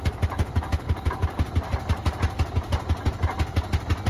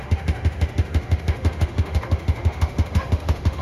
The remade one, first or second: second